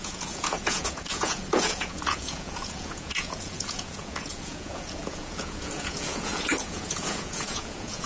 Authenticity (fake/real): fake